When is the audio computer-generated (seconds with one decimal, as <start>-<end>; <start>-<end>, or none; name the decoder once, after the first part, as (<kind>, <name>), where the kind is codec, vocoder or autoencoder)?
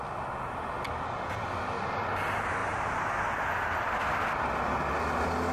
none